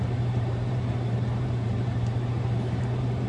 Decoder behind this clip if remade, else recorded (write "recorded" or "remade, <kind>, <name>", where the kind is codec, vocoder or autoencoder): remade, vocoder, BigVGAN v2